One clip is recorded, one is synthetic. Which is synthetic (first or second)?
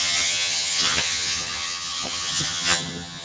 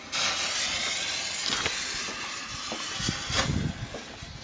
first